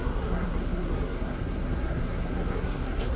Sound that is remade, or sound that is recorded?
remade